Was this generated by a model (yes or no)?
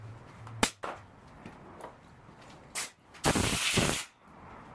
no